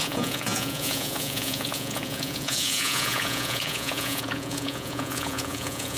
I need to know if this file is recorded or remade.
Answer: remade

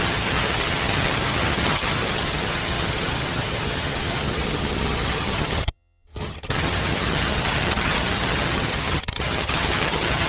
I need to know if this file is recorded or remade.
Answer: remade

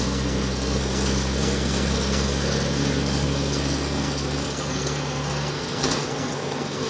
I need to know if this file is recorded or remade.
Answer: remade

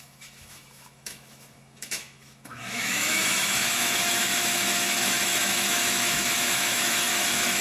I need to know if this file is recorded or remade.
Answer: remade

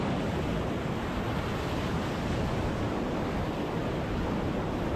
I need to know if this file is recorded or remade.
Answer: recorded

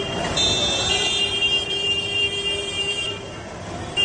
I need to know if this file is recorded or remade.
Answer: remade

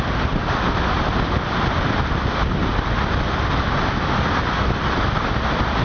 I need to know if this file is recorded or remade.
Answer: recorded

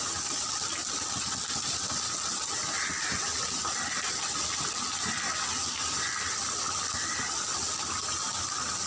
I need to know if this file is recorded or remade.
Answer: recorded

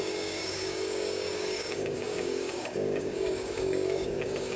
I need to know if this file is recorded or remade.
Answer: remade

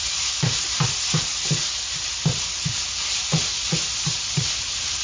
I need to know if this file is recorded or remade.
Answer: recorded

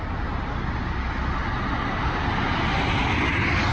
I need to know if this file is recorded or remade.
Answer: recorded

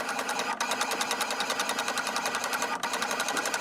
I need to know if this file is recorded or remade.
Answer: recorded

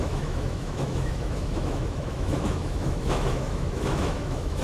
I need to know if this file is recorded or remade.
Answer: remade